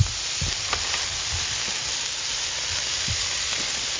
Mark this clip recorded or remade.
recorded